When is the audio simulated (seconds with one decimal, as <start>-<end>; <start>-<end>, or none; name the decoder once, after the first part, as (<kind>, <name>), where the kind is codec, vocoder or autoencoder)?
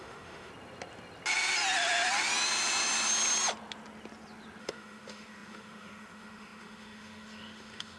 0.0-0.5 (autoencoder, DAC-VAE); 4.6-8.0